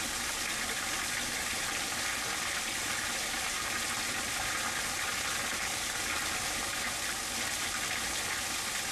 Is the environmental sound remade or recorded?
recorded